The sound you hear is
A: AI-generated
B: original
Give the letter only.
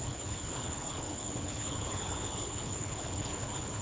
A